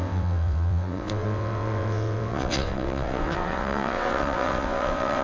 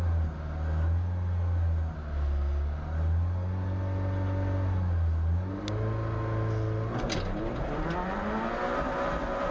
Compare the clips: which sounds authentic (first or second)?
second